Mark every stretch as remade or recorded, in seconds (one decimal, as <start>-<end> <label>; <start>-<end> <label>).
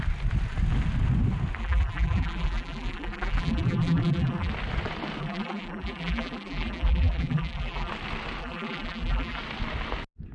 0.0-1.6 recorded; 1.6-4.5 remade; 4.5-5.2 recorded; 5.2-7.9 remade; 7.9-8.4 recorded; 8.4-9.4 remade; 9.4-10.3 recorded